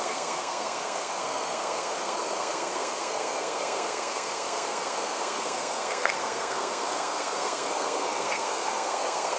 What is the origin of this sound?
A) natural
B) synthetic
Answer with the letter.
B